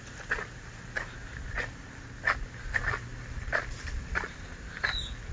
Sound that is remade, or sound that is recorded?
recorded